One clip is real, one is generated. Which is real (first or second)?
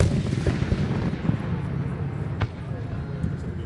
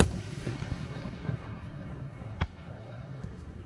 first